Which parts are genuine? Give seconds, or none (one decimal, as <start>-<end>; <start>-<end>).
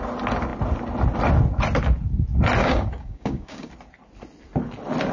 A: 0.0-2.6; 3.7-5.1